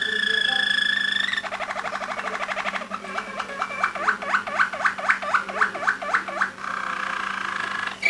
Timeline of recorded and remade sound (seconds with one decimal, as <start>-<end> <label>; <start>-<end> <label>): 0.0-8.1 recorded